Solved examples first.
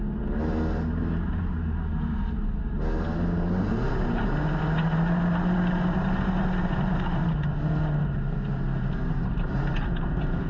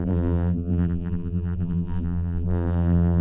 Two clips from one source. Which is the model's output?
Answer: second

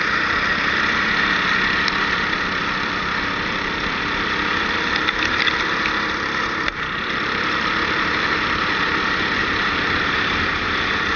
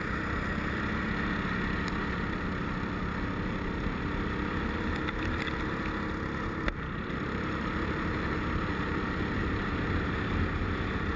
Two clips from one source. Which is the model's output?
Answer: first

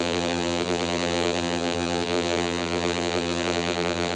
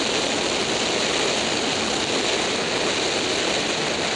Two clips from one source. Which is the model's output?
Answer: first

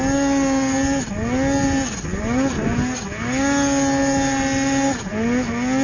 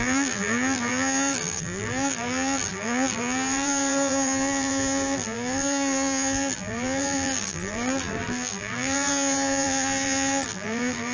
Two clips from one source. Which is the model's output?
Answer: second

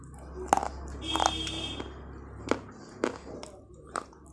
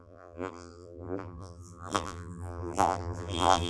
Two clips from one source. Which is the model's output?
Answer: second